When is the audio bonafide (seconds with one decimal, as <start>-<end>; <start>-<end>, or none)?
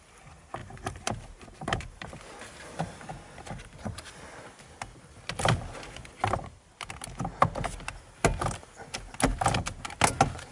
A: 0.0-0.6; 2.1-10.5